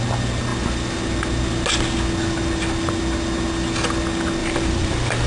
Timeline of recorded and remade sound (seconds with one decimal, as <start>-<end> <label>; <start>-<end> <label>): 0.0-4.4 recorded; 4.4-5.3 remade